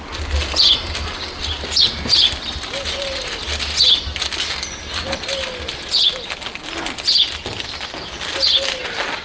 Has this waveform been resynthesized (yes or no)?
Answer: no